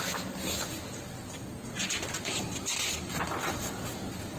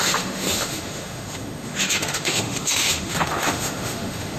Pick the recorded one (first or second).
first